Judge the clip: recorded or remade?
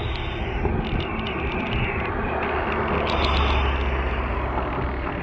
recorded